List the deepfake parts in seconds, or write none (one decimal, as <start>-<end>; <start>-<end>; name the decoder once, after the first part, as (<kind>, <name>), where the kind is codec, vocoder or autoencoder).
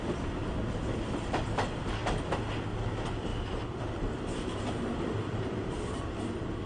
0.4-2.4 (vocoder, BigVGAN v2); 3.3-6.2